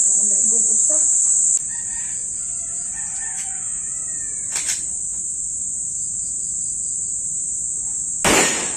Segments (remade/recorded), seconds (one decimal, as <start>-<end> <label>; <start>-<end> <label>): 0.0-3.3 recorded; 3.3-3.8 remade; 3.8-8.8 recorded